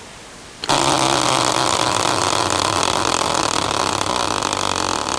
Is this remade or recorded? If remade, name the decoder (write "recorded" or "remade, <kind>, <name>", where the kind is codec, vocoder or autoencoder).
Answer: recorded